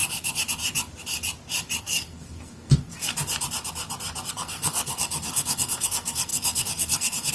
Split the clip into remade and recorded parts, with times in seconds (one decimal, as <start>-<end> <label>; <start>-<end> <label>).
0.0-1.8 recorded; 1.8-3.1 remade; 3.1-4.3 recorded; 4.3-7.3 remade